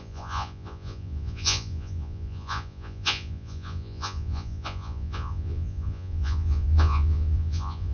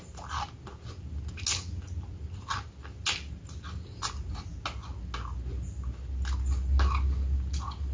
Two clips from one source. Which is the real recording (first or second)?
second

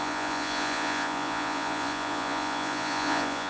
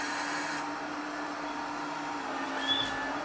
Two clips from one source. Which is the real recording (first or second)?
second